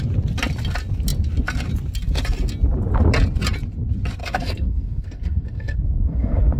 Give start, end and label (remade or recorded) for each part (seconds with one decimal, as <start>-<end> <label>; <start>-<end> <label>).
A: 0.0-4.2 recorded; 4.2-6.6 remade